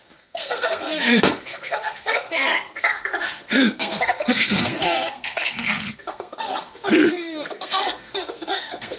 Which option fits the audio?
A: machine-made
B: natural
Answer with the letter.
A